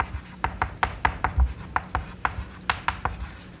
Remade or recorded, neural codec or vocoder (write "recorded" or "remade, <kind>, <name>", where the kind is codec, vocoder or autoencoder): recorded